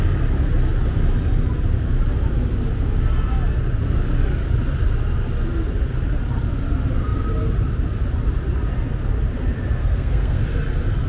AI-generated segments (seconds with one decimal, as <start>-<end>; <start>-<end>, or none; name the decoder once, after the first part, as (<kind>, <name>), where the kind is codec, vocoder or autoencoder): 9.8-10.4 (codec, SNAC)